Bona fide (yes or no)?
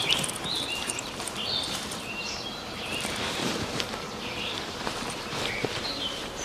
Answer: no